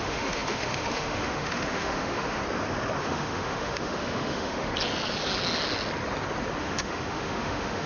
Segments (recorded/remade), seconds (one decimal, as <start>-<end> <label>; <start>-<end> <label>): 0.0-2.4 remade; 2.4-3.0 recorded; 3.0-4.7 remade; 4.7-6.6 recorded; 6.6-7.9 remade